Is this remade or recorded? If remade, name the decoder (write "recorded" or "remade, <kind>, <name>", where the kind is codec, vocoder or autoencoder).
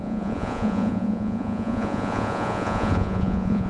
remade, vocoder, Vocos